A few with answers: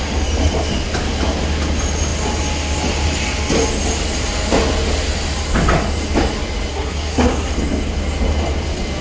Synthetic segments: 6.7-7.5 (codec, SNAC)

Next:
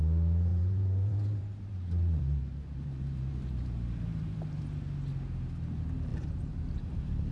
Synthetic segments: 0.5-4.6 (vocoder, BigVGAN v2)

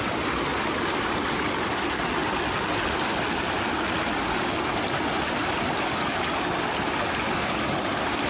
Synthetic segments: none

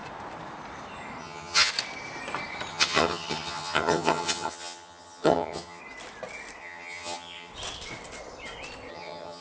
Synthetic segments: 1.2-1.7 (vocoder, HiFi-GAN); 2.7-5.8; 6.6-7.5; 8.9-9.4

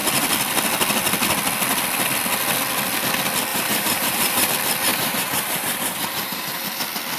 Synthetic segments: 3.5-4.5 (vocoder, BigVGAN v2); 4.9-6.8